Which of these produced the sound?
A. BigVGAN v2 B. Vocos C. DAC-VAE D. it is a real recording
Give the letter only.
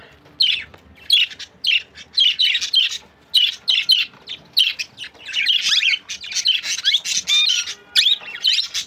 D